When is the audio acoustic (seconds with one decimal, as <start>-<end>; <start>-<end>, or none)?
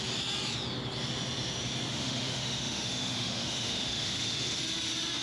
0.0-1.9; 4.6-5.2